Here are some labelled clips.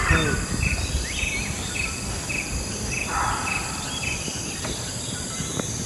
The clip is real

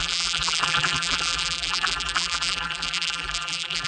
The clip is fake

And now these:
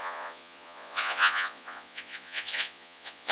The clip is fake